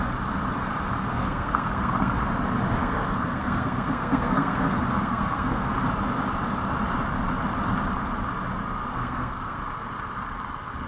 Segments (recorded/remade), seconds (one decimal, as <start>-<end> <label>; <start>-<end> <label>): 0.0-1.1 recorded; 1.1-2.1 remade; 2.1-2.8 recorded; 2.8-5.7 remade; 5.7-8.9 recorded; 8.9-9.6 remade; 9.6-10.9 recorded